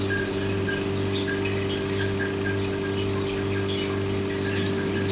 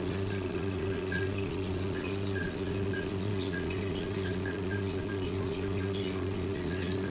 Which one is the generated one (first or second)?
second